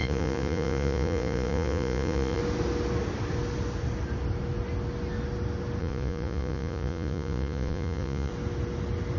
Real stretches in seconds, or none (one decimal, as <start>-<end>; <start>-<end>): 2.4-5.8; 8.3-9.2